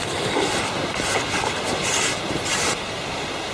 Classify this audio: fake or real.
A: real